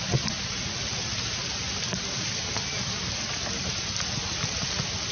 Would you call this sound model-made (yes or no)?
no